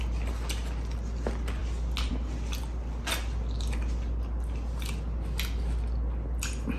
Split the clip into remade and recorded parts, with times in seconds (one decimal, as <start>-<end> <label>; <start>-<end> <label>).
0.0-6.8 recorded